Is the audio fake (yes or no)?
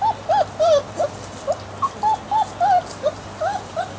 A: no